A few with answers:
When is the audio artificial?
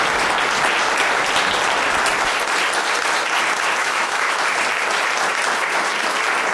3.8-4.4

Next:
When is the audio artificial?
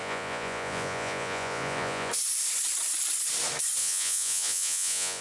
0.0-2.1; 3.8-5.2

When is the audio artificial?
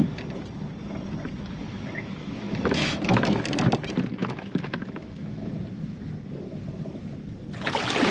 1.6-3.5; 4.2-5.5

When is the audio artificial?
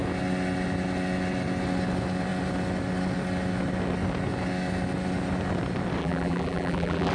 6.0-7.1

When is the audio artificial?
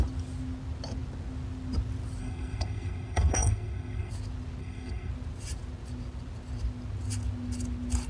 2.2-4.1; 4.6-5.1